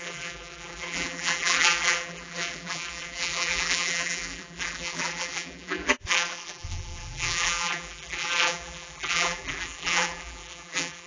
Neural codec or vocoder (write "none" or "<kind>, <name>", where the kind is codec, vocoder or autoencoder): vocoder, BigVGAN v2